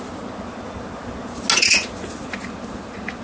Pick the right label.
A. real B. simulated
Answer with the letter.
A